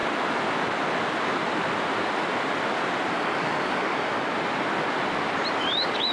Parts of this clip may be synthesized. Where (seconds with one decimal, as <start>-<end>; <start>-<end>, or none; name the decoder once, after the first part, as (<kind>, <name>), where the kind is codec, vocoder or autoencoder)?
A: 3.1-4.3 (codec, DAC); 5.6-6.1